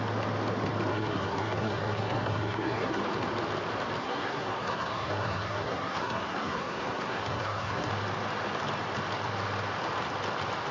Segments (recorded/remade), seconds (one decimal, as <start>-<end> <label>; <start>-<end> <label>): 0.0-0.9 recorded; 0.9-3.0 remade; 3.0-4.0 recorded; 4.0-7.9 remade; 7.9-10.7 recorded